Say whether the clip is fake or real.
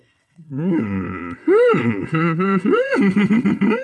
fake